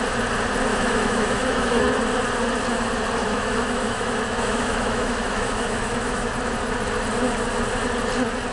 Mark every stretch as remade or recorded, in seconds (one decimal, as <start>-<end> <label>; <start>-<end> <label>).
0.0-0.7 recorded; 0.7-1.8 remade; 1.8-3.2 recorded; 3.2-6.3 remade; 6.3-8.5 recorded